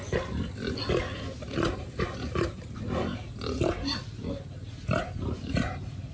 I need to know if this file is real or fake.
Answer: real